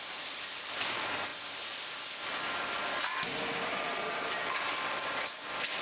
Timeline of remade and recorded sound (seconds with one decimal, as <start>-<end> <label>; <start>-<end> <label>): 0.0-1.3 remade; 1.3-3.5 recorded; 3.5-4.4 remade; 4.4-5.8 recorded